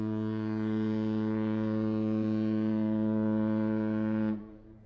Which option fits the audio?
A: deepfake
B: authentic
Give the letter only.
A